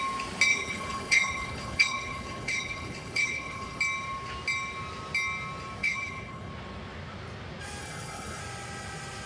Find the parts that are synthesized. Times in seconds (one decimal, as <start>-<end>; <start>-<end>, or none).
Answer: 0.5-3.8; 5.8-6.5; 7.8-8.4